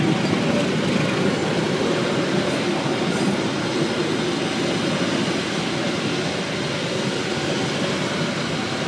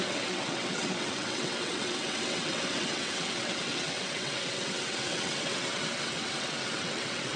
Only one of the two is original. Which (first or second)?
first